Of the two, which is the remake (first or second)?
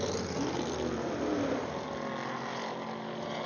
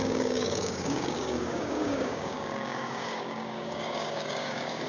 second